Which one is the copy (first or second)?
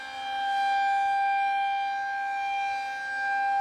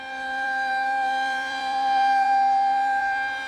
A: second